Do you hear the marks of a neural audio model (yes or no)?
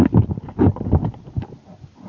no